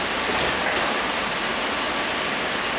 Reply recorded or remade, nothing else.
recorded